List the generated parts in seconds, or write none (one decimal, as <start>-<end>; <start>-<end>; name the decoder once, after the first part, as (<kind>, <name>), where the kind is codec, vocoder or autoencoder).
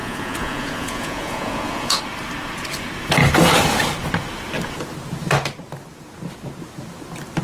0.0-2.0 (vocoder, Vocos)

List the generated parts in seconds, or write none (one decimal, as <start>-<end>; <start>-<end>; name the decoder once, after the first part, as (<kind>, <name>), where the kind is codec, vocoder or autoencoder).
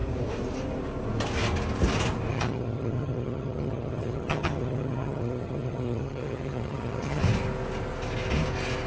2.3-7.2 (vocoder, HiFi-GAN)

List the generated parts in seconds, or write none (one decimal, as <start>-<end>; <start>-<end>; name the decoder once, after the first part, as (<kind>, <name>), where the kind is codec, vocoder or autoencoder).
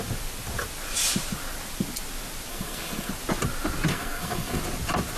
2.5-3.1 (codec, SNAC); 3.9-4.6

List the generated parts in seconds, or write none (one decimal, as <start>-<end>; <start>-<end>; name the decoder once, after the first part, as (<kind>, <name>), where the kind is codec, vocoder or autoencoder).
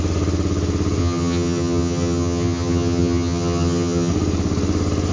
1.0-4.1 (vocoder, HiFi-GAN)